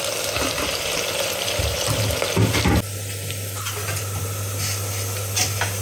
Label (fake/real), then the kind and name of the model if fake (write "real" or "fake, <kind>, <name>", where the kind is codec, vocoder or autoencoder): real